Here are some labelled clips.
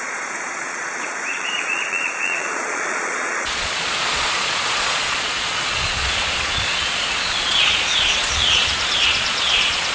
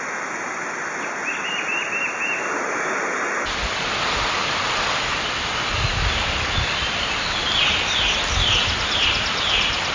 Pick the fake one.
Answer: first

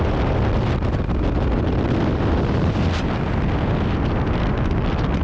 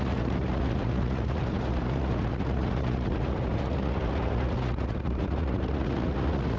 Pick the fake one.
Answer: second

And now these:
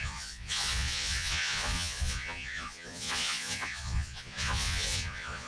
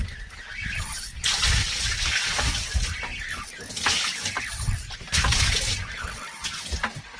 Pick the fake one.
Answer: first